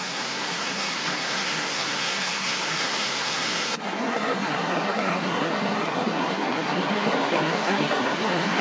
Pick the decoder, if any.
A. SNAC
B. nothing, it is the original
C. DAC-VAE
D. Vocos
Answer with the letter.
A